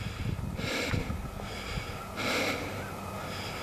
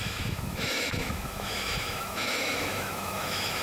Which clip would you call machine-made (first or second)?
second